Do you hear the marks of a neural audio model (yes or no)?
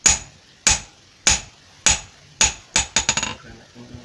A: no